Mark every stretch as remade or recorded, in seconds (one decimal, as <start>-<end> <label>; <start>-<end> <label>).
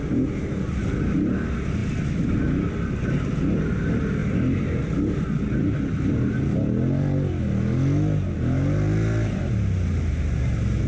0.0-10.9 recorded